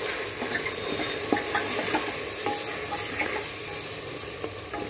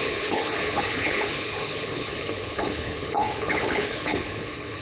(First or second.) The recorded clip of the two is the first